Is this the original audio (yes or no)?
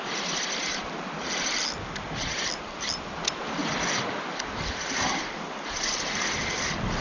yes